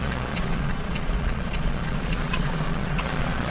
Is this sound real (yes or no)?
no